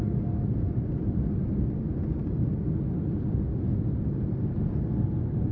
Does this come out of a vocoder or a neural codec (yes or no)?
no